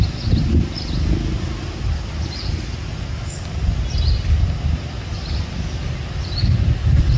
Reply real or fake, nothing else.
real